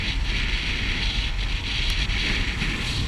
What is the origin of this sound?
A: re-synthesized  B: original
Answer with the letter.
B